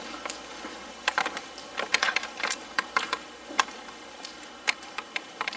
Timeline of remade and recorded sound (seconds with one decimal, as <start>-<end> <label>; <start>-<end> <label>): 0.0-0.5 recorded; 0.5-1.2 remade; 1.2-1.9 recorded; 1.9-5.6 remade